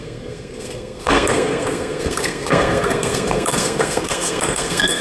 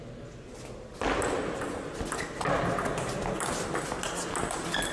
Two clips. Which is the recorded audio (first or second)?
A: second